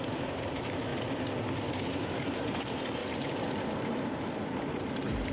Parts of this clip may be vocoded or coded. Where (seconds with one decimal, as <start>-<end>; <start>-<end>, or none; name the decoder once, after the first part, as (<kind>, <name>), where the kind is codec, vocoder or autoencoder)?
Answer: 0.0-0.9 (vocoder, BigVGAN v2); 1.6-3.0; 4.5-5.3